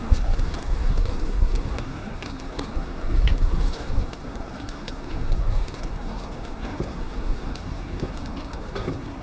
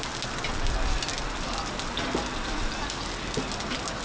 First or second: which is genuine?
second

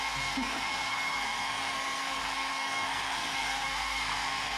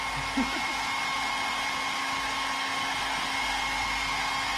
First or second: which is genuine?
second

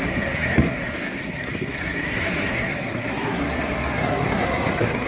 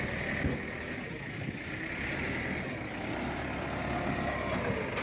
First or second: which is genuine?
second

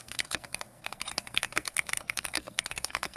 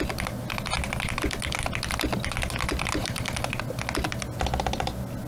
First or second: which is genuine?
second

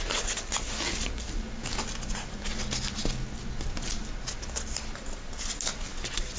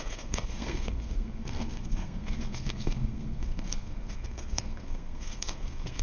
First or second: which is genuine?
first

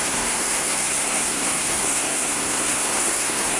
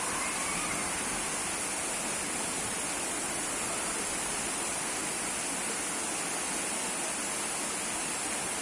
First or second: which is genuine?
second